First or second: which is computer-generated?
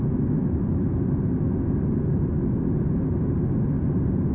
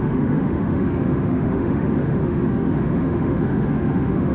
second